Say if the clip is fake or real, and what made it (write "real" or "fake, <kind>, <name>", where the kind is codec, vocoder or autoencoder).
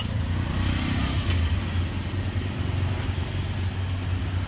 real